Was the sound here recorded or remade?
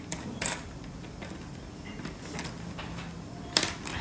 recorded